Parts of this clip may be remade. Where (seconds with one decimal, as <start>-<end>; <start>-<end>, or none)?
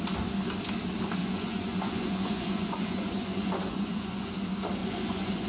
1.2-4.3; 4.8-5.5